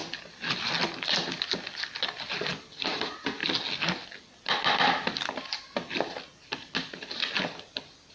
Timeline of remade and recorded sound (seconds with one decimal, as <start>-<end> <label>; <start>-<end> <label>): 0.0-2.8 recorded; 2.8-3.4 remade; 3.4-8.1 recorded